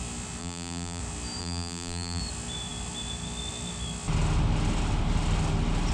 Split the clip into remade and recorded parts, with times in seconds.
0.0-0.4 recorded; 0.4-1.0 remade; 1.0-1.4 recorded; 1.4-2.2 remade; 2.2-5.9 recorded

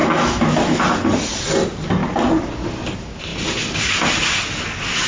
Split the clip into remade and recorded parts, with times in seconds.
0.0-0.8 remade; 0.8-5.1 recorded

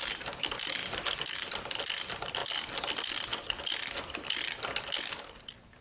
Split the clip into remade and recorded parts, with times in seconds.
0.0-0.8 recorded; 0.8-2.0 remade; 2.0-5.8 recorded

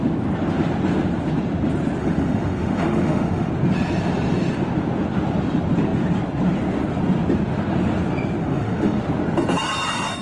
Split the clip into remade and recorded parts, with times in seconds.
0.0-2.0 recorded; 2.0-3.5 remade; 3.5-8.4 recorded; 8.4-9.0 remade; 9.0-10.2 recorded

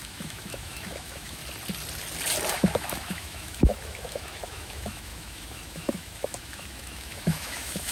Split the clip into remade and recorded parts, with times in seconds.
0.0-1.4 remade; 1.4-2.5 recorded; 2.5-7.9 remade

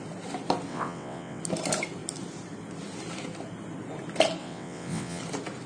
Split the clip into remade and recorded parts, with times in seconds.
0.0-0.7 recorded; 0.7-1.4 remade; 1.4-4.4 recorded; 4.4-5.2 remade; 5.2-5.7 recorded

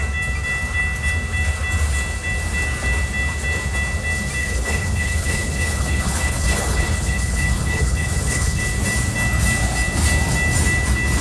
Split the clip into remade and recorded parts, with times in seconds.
0.0-4.4 recorded; 4.4-8.6 remade; 8.6-11.2 recorded

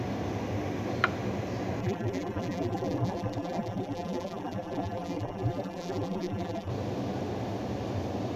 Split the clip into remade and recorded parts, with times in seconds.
0.0-1.8 recorded; 1.8-6.7 remade; 6.7-8.4 recorded